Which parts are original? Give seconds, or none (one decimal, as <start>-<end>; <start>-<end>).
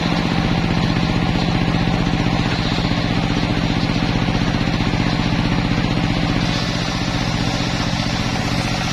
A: 0.0-8.9